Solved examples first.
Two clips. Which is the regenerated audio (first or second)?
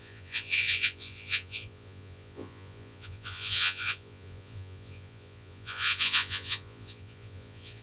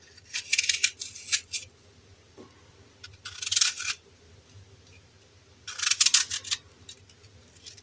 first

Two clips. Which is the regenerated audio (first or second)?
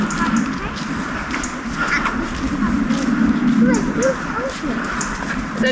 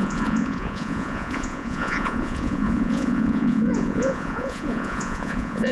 second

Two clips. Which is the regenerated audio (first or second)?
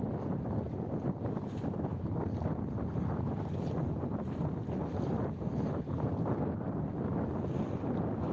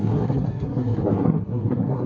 second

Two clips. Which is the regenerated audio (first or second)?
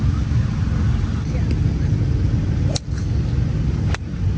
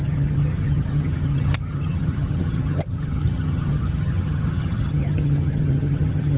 second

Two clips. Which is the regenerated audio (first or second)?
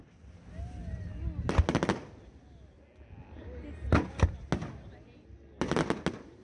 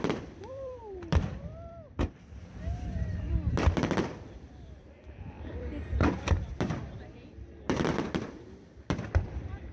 second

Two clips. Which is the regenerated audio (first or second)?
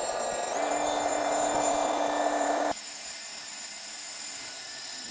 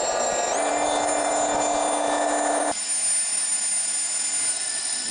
first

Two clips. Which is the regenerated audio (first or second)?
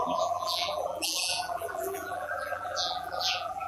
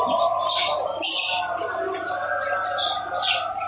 first